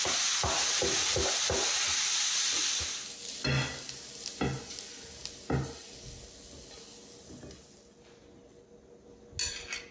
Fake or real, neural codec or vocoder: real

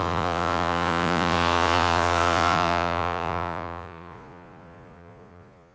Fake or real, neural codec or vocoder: fake, vocoder, Vocos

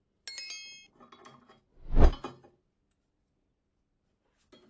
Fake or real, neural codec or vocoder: real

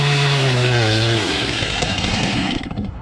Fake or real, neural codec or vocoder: fake, codec, SNAC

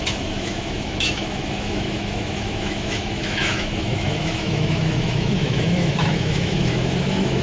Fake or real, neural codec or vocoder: fake, autoencoder, DAC-VAE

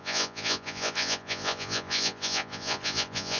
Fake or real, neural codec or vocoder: fake, vocoder, Vocos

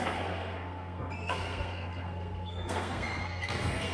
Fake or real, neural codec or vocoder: fake, codec, SNAC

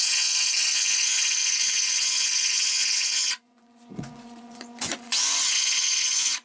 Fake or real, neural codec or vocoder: fake, vocoder, Vocos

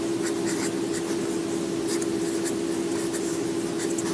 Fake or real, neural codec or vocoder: real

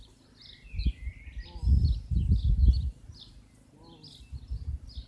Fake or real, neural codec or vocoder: real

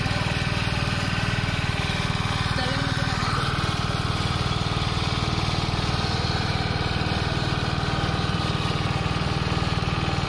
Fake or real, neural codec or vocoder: real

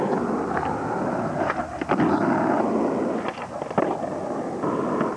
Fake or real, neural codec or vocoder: real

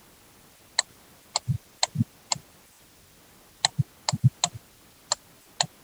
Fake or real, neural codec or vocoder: real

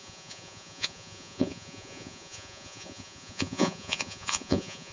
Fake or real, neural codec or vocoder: fake, vocoder, Vocos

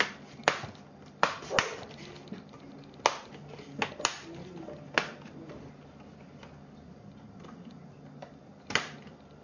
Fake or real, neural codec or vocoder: real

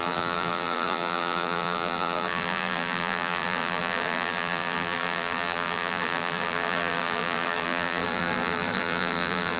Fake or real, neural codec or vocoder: fake, vocoder, BigVGAN v2